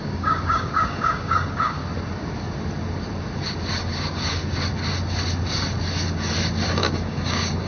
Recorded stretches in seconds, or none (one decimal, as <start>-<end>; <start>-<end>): 1.8-3.7; 4.4-6.8